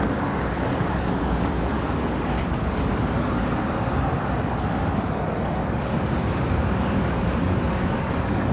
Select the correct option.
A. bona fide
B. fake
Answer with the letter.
B